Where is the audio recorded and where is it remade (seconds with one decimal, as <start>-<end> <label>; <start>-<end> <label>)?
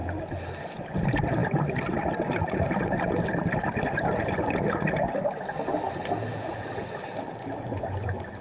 0.0-8.4 recorded